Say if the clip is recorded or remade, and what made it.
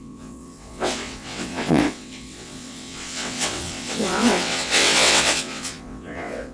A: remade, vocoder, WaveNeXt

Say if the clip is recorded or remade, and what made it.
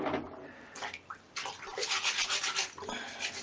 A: recorded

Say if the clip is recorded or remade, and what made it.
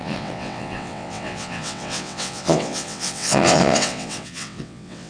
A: remade, vocoder, WaveNeXt